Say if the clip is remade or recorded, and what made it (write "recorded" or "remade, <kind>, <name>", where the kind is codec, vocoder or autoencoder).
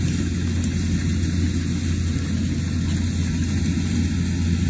recorded